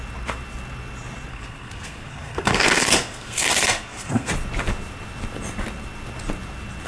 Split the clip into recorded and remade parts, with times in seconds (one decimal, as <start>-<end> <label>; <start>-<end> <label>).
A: 0.0-1.3 recorded; 1.3-4.3 remade; 4.3-6.9 recorded